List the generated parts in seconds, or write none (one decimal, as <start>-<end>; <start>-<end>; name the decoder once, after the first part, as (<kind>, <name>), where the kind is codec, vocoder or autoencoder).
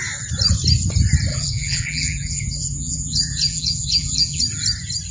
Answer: 1.3-4.4 (vocoder, BigVGAN v2)